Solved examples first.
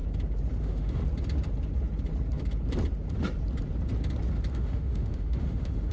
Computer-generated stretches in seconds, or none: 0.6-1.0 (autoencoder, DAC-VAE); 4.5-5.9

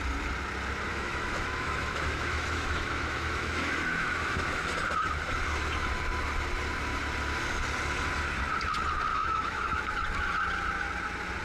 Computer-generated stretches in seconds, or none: 0.9-4.7 (autoencoder, DAC-VAE); 9.1-9.9

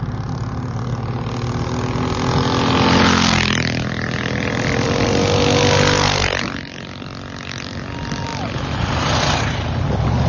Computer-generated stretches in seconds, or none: none

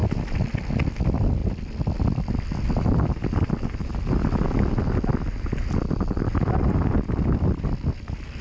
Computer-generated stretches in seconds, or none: none

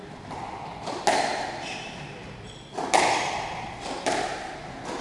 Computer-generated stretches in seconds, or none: none

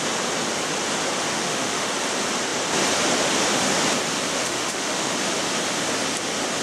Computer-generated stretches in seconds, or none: 1.3-1.9 (autoencoder, DAC-VAE); 4.3-5.1